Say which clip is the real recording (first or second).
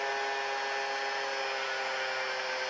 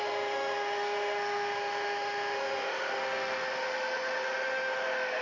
first